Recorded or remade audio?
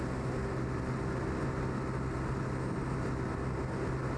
recorded